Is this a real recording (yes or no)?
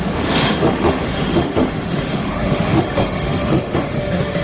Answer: no